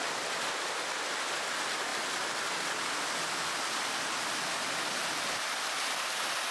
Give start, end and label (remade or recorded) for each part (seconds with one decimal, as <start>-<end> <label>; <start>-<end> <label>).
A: 0.0-6.5 recorded